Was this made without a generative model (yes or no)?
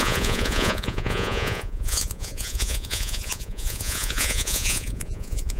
no